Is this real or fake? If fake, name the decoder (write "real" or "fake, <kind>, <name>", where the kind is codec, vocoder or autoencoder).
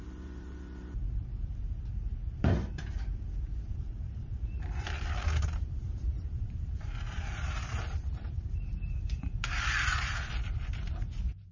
fake, vocoder, BigVGAN v2